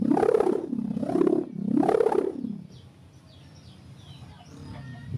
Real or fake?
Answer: real